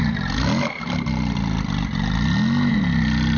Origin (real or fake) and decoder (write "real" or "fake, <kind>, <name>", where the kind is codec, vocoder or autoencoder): real